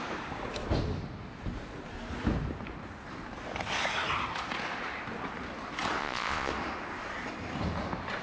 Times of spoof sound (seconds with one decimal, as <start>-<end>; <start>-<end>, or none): 6.0-6.5